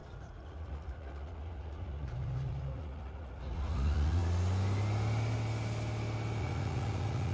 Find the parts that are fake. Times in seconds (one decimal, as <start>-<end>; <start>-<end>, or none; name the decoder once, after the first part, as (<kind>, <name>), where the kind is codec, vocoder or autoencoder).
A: 0.0-4.2 (vocoder, Vocos); 6.4-7.3